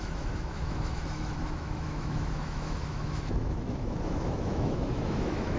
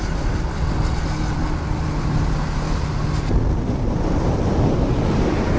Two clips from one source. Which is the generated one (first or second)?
first